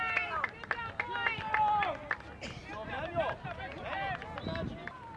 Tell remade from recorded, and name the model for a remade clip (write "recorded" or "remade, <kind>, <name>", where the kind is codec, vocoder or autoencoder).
recorded